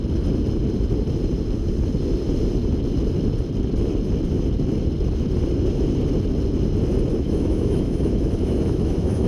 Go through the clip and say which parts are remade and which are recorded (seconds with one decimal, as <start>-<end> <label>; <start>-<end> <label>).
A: 0.0-7.1 recorded; 7.1-9.3 remade